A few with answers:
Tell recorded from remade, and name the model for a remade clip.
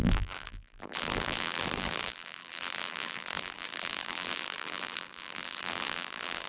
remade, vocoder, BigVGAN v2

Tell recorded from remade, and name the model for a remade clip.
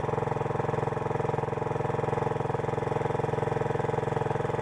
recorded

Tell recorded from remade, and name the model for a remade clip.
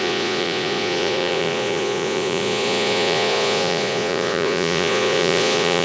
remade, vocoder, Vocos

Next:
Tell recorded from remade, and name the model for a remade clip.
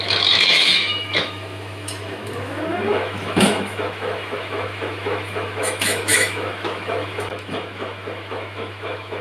remade, autoencoder, DAC-VAE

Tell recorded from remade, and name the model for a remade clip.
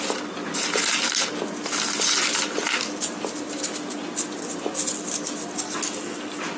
recorded